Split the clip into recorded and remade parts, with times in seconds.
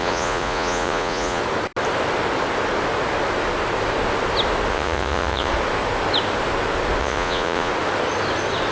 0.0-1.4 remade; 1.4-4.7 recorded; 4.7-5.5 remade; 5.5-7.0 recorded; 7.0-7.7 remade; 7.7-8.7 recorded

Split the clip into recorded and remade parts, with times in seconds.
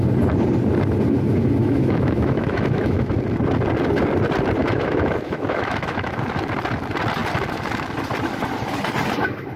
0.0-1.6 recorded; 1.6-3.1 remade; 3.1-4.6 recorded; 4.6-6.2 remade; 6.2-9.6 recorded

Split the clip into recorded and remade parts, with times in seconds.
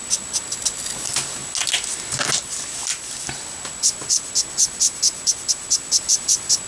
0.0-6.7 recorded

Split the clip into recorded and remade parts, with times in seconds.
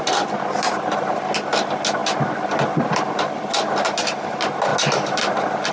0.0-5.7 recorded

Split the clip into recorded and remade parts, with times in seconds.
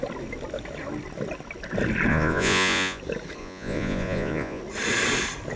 0.0-2.1 recorded; 2.1-3.0 remade; 3.0-3.4 recorded; 3.4-4.6 remade; 4.6-5.6 recorded